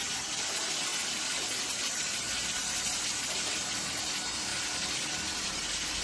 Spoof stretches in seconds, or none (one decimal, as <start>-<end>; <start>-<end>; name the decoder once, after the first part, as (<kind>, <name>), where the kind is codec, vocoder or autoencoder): 4.5-5.4 (vocoder, BigVGAN v2)